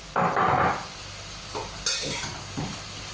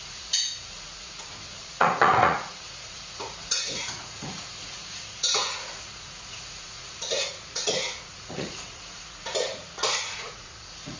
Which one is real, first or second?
first